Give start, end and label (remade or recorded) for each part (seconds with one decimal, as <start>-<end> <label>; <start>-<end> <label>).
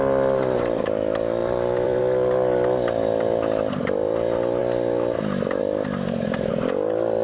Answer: 0.0-1.4 recorded; 1.4-2.0 remade; 2.0-3.8 recorded; 3.8-4.6 remade; 4.6-5.6 recorded; 5.6-6.5 remade; 6.5-7.2 recorded